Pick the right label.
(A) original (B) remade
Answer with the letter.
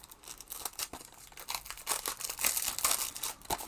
A